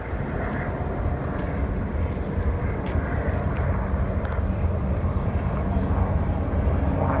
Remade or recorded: recorded